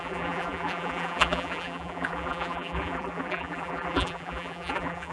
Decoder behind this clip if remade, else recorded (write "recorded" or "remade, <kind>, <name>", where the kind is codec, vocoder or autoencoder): remade, vocoder, BigVGAN v2